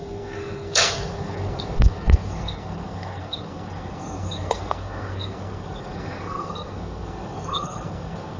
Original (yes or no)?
no